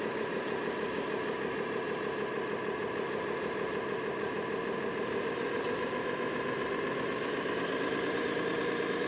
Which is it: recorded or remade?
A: remade